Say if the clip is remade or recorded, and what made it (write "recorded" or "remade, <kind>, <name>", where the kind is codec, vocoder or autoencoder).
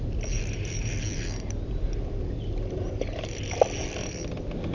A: recorded